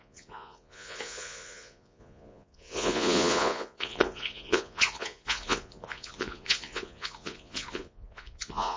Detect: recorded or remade remade